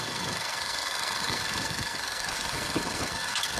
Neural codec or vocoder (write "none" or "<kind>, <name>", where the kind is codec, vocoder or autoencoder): codec, SNAC